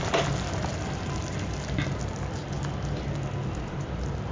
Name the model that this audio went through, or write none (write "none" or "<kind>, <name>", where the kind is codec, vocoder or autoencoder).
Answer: none